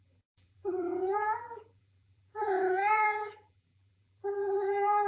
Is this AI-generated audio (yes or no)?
yes